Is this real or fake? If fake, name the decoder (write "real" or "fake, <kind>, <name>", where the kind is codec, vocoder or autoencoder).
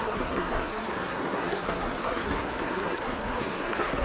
fake, codec, SNAC